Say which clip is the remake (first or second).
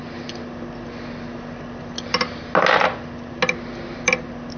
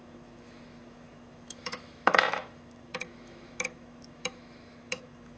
second